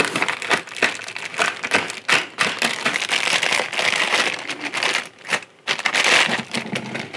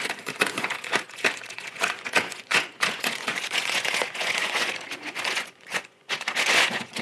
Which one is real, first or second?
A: first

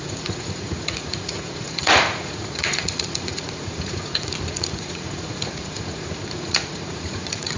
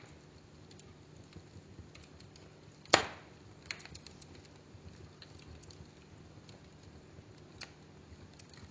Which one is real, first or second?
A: second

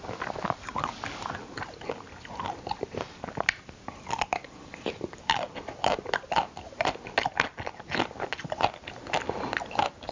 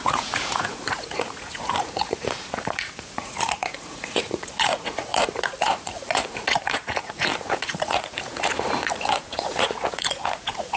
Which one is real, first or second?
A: first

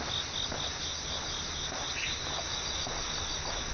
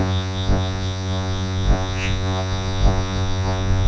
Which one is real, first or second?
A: first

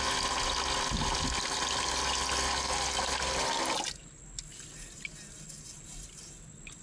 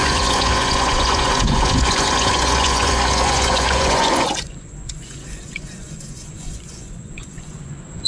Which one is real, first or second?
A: first